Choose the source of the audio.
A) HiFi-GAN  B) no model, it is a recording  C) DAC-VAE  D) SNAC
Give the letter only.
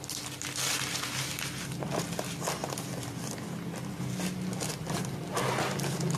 B